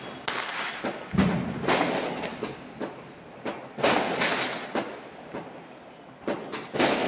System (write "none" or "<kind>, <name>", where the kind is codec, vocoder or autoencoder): none